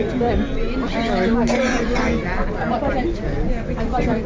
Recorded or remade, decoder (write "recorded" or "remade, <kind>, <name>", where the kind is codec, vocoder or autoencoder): recorded